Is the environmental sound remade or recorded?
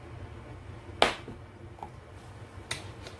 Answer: recorded